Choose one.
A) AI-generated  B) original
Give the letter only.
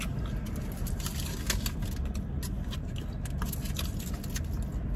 B